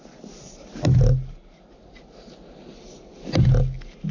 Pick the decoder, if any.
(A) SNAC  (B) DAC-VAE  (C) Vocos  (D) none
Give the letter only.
D